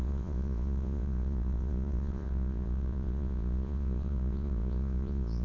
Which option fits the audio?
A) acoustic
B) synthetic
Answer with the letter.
B